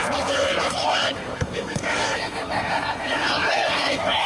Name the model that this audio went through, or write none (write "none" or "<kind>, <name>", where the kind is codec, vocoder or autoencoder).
codec, SNAC